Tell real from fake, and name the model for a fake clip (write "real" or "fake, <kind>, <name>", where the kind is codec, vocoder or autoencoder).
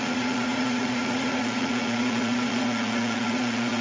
fake, vocoder, Vocos